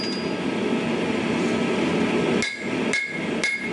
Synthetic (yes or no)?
no